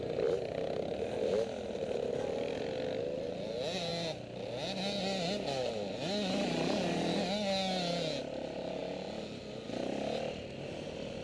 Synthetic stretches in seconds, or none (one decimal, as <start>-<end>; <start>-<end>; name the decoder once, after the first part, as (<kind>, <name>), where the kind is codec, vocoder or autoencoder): none